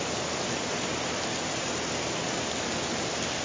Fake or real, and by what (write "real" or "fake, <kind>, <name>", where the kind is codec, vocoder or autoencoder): real